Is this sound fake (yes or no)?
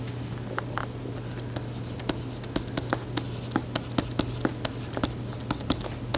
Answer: no